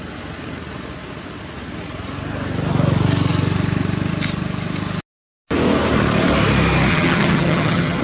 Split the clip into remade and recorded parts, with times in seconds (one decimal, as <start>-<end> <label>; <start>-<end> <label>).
0.0-6.9 recorded; 6.9-8.0 remade